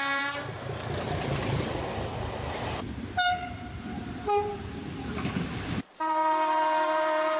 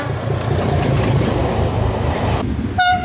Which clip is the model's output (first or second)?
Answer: first